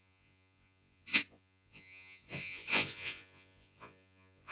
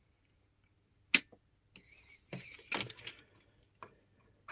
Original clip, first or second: second